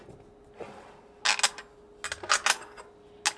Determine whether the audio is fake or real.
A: real